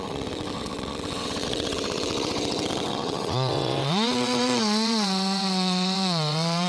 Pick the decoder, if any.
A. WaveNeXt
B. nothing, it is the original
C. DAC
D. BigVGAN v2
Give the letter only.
A